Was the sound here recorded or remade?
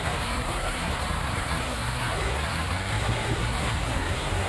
remade